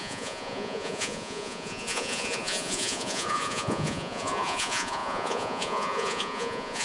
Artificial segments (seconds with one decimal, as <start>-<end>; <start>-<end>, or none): 0.0-6.8